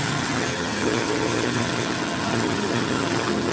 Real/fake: fake